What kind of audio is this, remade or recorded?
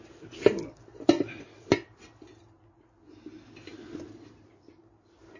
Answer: recorded